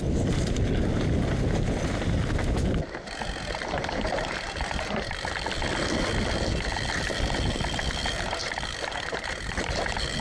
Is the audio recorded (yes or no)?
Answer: yes